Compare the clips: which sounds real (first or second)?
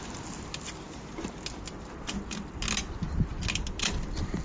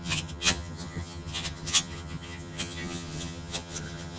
first